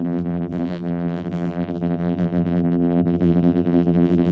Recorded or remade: remade